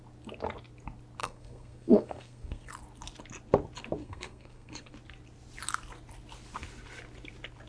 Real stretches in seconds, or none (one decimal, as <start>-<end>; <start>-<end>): 0.0-1.2; 2.7-4.0; 4.9-7.7